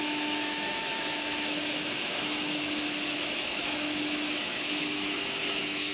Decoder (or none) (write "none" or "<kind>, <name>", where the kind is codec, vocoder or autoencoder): autoencoder, DAC-VAE